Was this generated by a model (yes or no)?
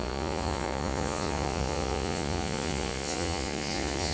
yes